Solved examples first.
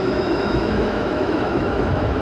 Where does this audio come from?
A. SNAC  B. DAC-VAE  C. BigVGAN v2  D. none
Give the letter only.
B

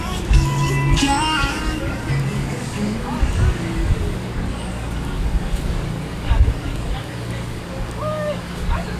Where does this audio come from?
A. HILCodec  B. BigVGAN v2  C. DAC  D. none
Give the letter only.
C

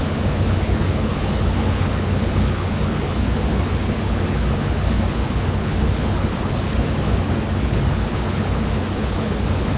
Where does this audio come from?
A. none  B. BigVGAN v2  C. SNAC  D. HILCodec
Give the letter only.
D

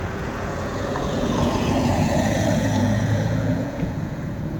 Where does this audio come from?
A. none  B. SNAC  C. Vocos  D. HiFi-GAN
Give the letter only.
C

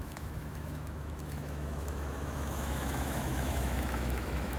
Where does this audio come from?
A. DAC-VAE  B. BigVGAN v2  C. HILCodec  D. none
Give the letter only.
A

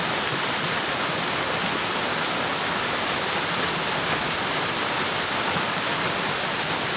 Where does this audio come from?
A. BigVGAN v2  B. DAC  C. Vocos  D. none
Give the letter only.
D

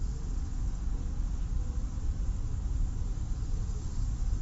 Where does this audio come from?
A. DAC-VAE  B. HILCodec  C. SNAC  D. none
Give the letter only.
D